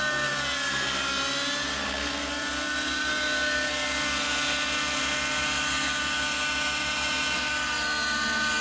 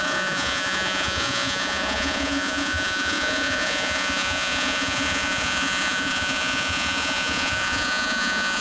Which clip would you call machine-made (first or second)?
second